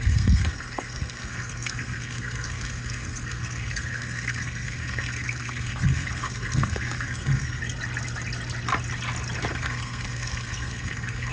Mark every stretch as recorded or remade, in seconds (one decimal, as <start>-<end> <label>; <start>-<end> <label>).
0.0-7.6 remade; 7.6-9.5 recorded; 9.5-11.3 remade